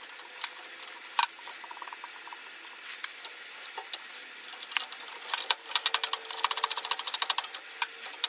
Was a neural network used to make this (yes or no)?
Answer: no